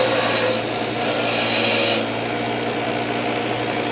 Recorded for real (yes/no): yes